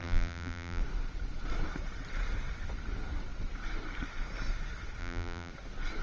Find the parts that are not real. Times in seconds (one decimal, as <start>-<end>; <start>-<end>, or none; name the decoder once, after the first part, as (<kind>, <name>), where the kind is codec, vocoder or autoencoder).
0.0-0.8 (vocoder, BigVGAN v2); 5.0-5.5